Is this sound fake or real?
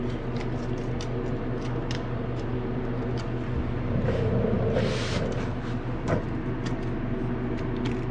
real